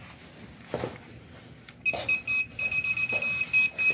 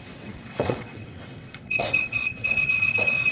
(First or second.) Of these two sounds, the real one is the first